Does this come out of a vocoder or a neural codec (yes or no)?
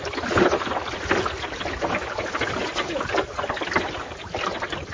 no